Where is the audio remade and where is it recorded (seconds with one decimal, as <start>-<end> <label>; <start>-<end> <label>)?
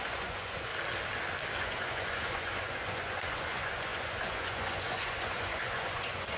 0.0-0.7 remade; 0.7-1.6 recorded; 1.6-6.4 remade